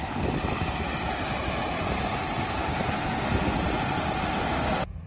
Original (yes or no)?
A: yes